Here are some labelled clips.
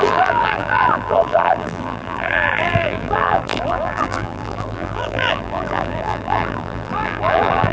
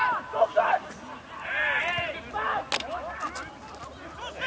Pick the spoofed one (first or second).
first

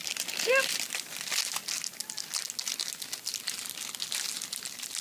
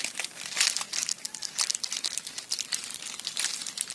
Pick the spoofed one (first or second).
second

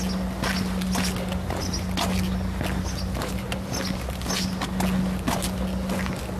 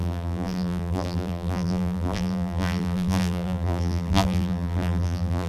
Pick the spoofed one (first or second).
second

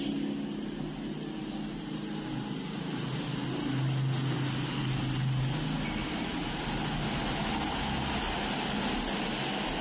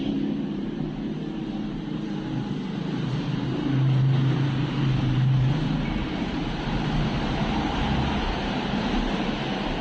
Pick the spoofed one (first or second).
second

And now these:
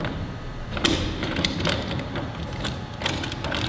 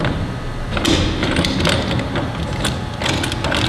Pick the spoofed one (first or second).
first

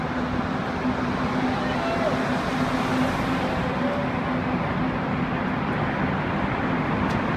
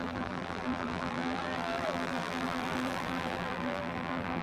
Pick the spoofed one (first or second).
second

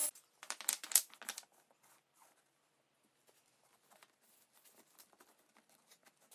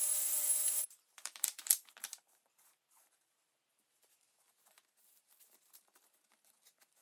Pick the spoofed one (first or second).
second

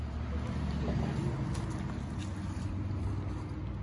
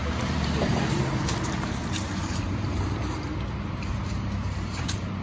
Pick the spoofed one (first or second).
second